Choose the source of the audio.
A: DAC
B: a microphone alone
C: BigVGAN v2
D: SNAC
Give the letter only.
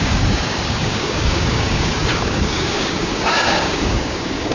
A